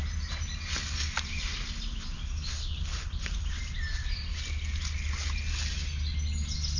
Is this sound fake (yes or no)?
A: no